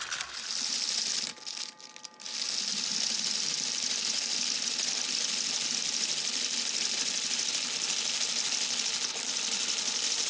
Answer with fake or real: real